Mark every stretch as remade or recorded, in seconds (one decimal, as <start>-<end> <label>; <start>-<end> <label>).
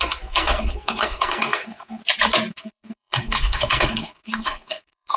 0.0-2.0 remade; 2.0-2.5 recorded; 2.5-5.2 remade